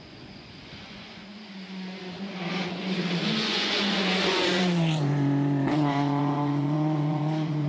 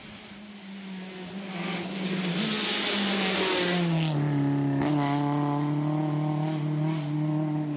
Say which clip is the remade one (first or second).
first